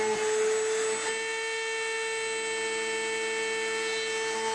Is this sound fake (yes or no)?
no